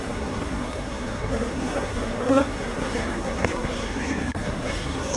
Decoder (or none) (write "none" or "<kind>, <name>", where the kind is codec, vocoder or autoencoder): codec, SNAC